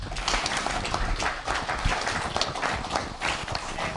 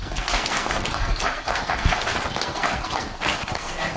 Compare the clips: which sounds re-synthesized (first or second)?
second